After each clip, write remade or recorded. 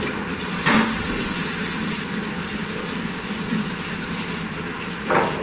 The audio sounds recorded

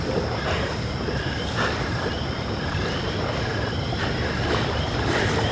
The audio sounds recorded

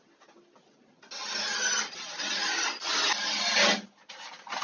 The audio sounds recorded